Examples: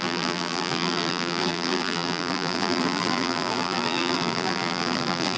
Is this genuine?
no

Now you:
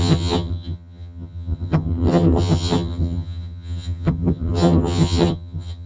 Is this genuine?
no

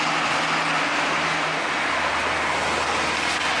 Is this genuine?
yes